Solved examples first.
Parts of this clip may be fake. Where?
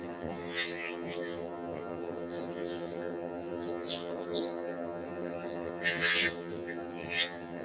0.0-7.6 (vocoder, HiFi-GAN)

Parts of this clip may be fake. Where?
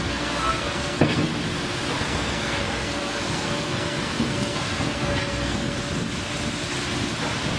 0.0-1.3 (codec, SNAC); 2.0-5.8